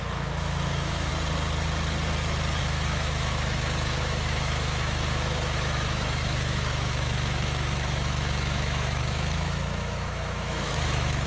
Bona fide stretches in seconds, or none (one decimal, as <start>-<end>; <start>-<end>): 1.1-2.6